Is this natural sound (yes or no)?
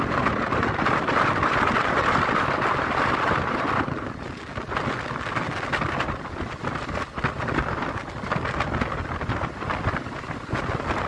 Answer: yes